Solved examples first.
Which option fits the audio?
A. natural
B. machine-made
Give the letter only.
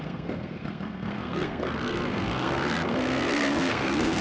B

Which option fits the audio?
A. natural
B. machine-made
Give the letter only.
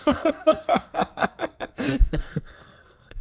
B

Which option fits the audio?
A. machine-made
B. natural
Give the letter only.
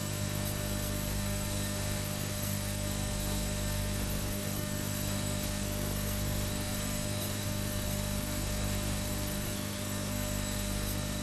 A